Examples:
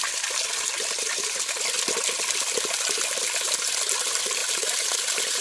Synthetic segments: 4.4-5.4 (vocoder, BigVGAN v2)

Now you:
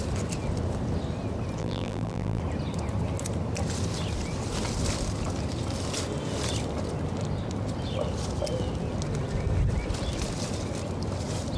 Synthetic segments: 1.6-2.4 (vocoder, BigVGAN v2)